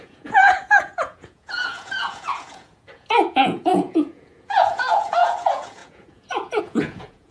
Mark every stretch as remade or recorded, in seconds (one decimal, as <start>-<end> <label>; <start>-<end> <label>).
0.0-7.3 remade